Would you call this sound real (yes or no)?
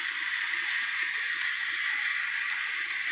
yes